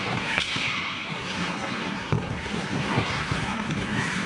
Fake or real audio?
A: fake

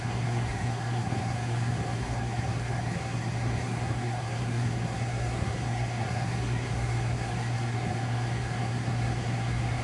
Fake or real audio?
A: fake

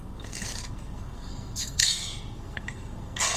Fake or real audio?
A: fake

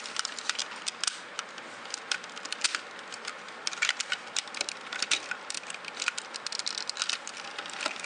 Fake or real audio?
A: real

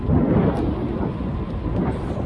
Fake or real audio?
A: real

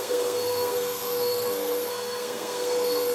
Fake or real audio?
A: fake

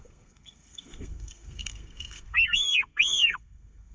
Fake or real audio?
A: fake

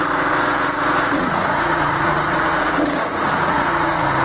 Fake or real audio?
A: fake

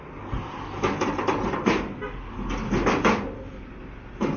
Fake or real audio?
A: real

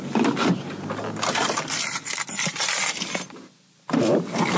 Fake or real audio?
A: real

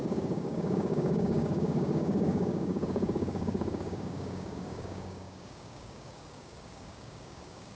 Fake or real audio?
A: fake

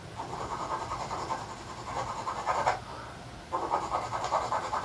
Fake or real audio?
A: real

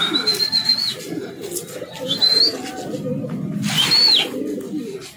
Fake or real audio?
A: real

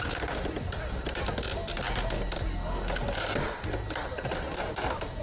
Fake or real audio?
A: real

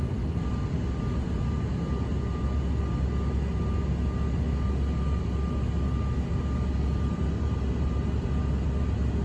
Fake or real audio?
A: real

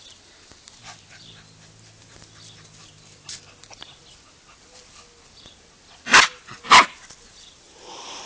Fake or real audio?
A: real